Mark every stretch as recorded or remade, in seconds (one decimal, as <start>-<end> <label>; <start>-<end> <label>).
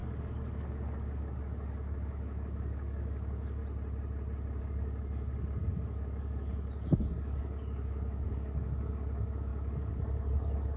0.0-3.6 remade; 3.6-4.6 recorded; 4.6-10.8 remade